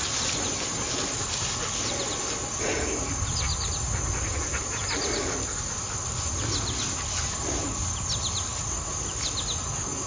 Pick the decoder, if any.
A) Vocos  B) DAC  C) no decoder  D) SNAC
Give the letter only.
C